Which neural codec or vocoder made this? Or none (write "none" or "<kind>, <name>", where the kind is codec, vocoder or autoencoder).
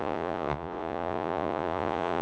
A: vocoder, Vocos